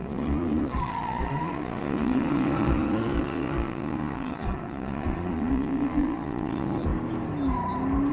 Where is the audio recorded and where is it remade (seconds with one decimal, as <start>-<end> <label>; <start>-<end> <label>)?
0.0-6.9 remade; 6.9-8.1 recorded